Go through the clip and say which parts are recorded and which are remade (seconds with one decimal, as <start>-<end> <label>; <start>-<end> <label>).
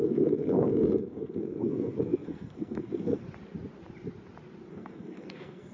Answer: 0.0-3.2 remade; 3.2-4.7 recorded; 4.7-5.7 remade